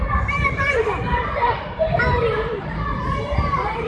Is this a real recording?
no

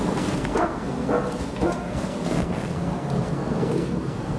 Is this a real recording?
no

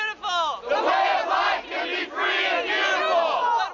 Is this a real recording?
yes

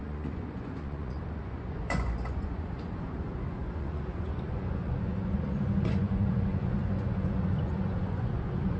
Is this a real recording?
no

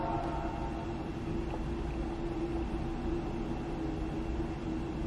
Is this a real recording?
yes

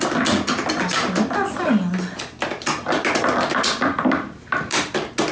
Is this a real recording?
yes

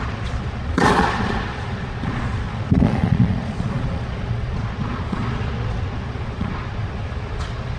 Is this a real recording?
no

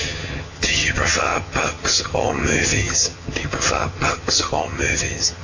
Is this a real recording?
no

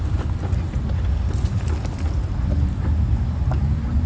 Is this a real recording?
yes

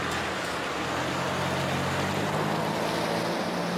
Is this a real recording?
yes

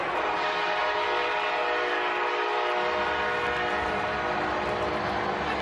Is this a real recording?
yes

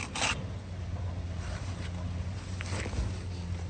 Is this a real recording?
yes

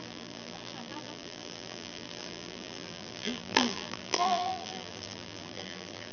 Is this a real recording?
no